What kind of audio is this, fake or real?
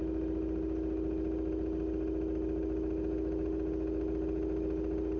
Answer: real